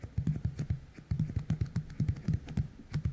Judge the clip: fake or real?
real